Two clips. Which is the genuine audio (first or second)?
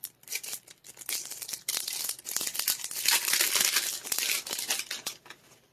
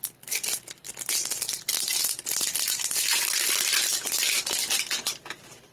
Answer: second